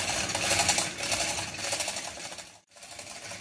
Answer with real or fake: real